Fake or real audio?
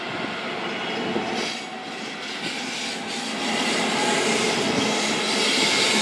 real